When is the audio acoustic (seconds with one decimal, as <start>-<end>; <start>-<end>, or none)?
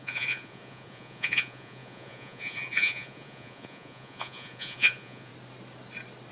5.3-6.3